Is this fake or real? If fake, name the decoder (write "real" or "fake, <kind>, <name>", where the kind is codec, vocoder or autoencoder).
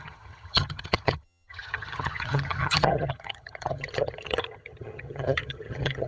fake, vocoder, HiFi-GAN